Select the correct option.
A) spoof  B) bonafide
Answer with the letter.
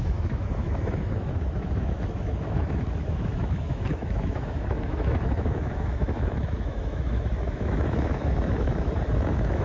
A